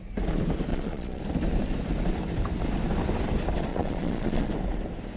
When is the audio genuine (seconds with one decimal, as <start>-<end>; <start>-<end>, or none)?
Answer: 0.0-0.7; 1.2-3.7; 4.5-5.2